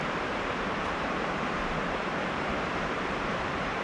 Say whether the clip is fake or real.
fake